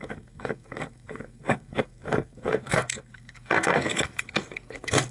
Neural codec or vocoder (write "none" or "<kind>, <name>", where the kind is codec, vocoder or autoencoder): codec, SNAC